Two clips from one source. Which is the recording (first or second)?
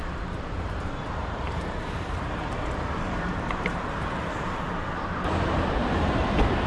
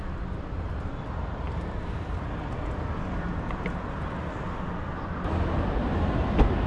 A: second